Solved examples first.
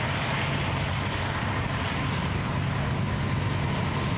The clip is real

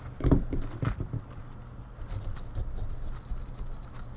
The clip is real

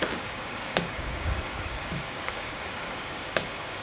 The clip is fake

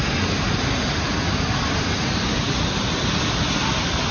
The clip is real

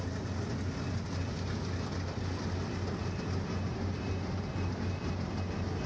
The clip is real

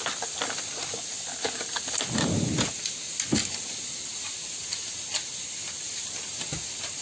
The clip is real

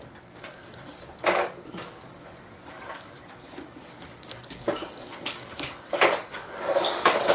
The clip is fake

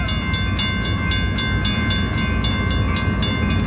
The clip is real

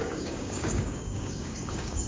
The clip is fake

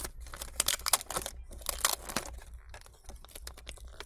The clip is real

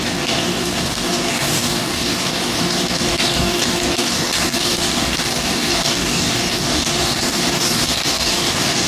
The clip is fake